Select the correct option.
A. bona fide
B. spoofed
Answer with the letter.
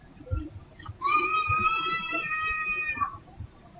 B